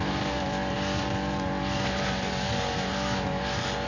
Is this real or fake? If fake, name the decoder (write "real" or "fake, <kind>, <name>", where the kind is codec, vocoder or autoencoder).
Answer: real